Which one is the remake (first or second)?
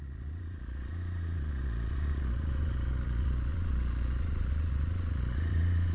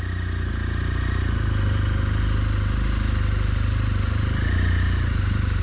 first